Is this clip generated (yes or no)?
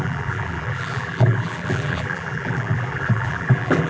yes